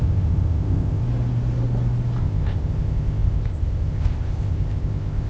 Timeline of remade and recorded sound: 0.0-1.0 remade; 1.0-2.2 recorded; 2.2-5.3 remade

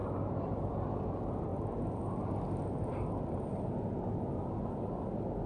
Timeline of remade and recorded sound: 0.0-5.5 recorded

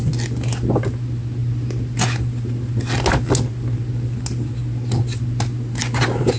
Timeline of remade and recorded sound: 0.0-6.4 recorded